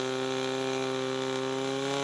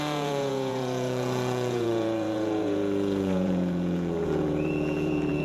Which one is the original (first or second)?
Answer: first